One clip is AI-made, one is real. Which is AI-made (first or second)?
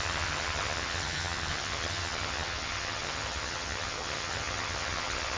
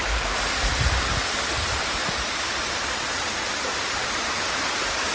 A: first